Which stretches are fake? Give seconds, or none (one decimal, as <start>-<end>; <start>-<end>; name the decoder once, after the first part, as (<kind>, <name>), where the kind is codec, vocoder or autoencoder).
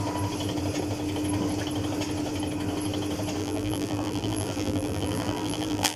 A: 3.4-6.0 (vocoder, BigVGAN v2)